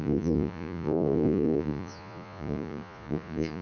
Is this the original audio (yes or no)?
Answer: no